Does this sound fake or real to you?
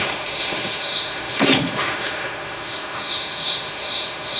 fake